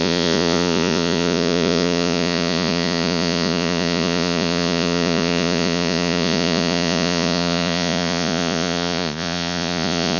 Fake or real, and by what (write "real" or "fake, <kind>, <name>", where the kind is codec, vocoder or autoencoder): fake, vocoder, Vocos